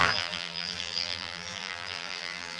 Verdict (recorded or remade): remade